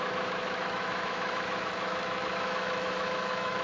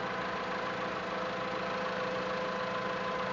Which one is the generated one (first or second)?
first